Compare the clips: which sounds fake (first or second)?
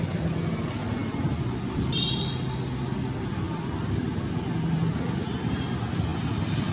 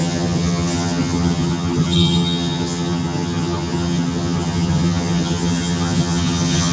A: second